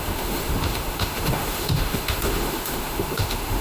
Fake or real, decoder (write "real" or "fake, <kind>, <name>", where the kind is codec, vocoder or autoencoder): fake, autoencoder, DAC-VAE